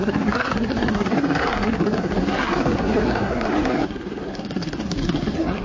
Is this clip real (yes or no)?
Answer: no